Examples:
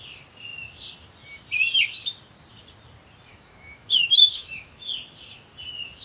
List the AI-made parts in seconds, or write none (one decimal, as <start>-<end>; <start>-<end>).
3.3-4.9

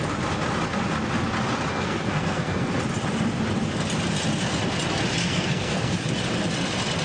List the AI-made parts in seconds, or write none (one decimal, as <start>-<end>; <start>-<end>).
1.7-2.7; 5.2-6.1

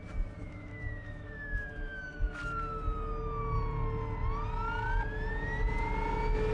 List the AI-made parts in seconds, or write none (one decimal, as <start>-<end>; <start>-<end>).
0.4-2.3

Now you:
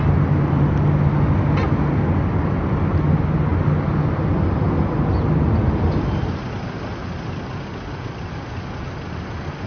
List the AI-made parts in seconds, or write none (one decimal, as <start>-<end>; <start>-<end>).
none

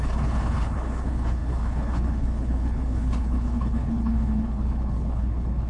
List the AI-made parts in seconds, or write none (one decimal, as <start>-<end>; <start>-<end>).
0.0-5.7

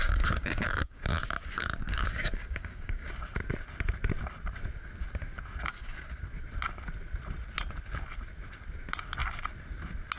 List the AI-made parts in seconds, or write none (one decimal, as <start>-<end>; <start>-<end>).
0.0-3.1; 5.7-6.2